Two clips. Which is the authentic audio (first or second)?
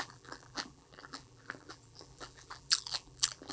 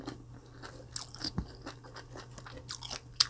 second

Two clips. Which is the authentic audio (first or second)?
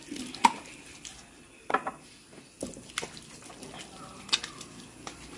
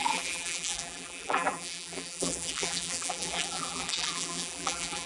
first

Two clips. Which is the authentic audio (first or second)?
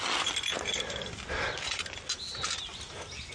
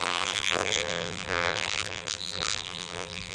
first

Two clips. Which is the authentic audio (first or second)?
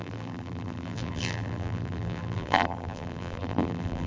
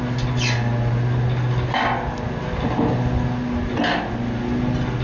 second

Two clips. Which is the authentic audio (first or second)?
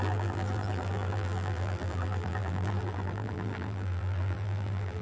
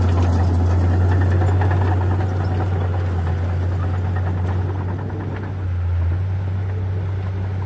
second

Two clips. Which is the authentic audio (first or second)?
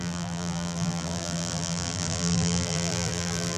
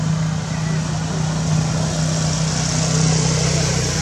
second